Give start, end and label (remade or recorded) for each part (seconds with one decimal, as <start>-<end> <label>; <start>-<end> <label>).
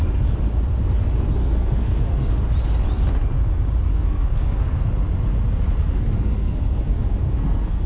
0.0-1.4 recorded; 1.4-2.3 remade; 2.3-3.9 recorded; 3.9-4.9 remade; 4.9-5.8 recorded; 5.8-7.9 remade